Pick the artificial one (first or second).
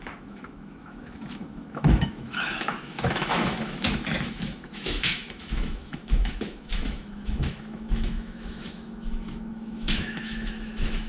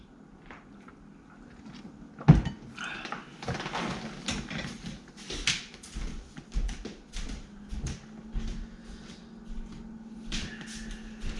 first